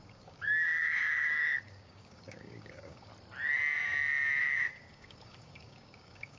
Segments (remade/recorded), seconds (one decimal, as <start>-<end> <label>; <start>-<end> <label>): 0.0-3.1 remade; 3.1-4.4 recorded; 4.4-6.4 remade